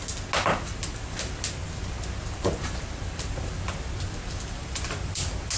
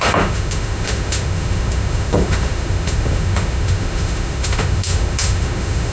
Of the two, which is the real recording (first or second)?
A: first